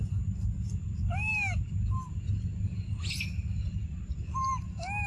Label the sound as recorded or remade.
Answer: recorded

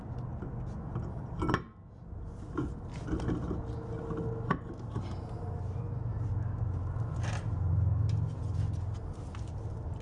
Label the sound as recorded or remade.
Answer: recorded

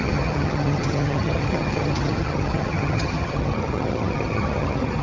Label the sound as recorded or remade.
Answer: remade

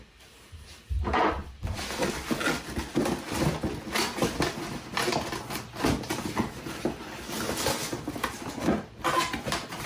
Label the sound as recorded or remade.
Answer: recorded